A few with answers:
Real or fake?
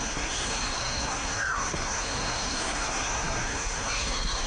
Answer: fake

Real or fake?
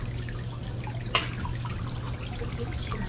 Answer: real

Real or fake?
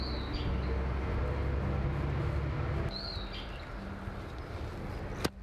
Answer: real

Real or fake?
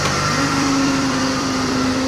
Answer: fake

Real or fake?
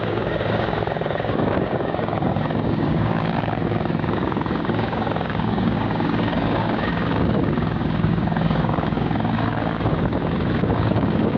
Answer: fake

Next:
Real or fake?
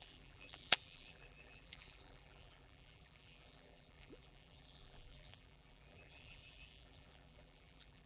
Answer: fake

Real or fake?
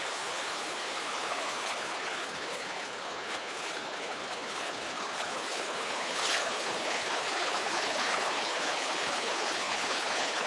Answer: fake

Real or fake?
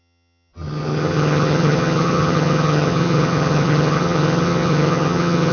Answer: fake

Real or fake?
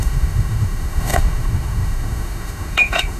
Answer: fake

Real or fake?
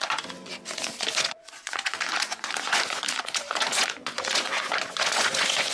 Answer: fake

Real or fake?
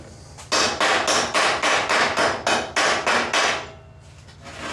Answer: real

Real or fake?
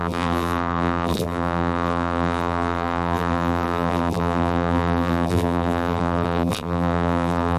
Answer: fake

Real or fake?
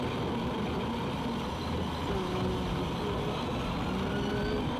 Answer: real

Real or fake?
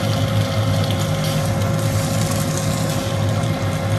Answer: real